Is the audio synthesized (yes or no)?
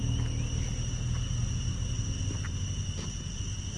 no